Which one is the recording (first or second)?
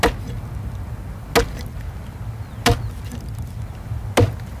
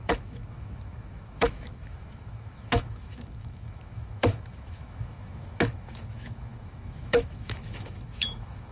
first